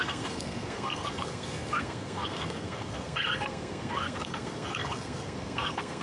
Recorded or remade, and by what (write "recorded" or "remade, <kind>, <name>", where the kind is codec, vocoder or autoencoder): remade, codec, SNAC